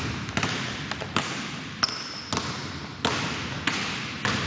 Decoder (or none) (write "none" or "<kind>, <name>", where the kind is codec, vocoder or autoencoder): none